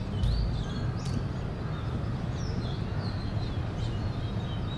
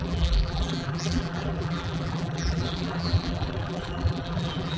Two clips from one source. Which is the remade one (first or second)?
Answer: second